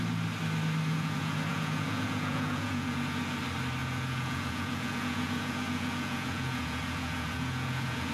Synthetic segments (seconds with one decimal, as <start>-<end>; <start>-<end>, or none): 0.9-3.4; 3.8-8.1